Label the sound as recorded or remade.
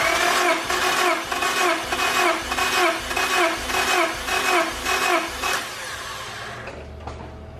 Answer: recorded